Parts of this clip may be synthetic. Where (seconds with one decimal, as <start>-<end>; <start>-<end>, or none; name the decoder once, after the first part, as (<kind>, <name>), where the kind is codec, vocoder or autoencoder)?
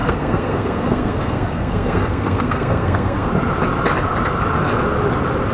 0.0-3.3 (codec, SNAC)